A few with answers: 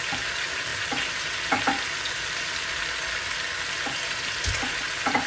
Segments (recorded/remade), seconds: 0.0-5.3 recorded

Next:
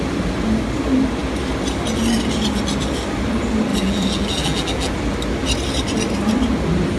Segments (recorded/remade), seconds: 0.0-3.7 recorded; 3.7-4.9 remade; 4.9-7.0 recorded

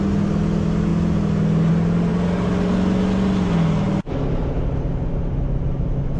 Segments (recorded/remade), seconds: 0.0-6.2 recorded

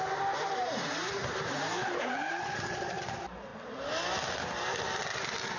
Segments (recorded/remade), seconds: 0.0-3.5 remade; 3.5-5.6 recorded

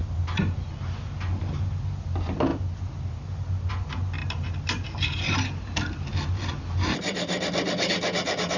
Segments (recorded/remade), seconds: 0.0-8.6 remade

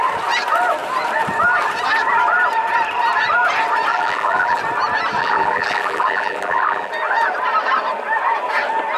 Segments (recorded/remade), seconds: 0.0-3.9 recorded; 3.9-4.6 remade; 4.6-5.2 recorded; 5.2-6.9 remade; 6.9-9.0 recorded